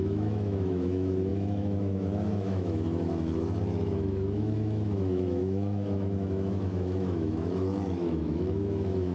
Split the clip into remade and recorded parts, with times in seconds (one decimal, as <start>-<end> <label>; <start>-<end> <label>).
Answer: 0.0-9.1 remade